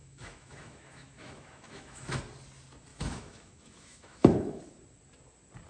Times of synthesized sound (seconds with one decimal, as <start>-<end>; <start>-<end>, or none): 0.0-2.2; 2.9-4.6